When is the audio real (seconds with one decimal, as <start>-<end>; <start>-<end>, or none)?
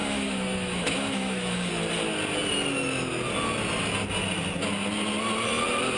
1.7-6.0